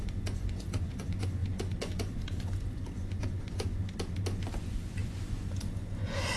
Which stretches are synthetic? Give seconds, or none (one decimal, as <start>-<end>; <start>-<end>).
0.0-3.8; 4.6-6.4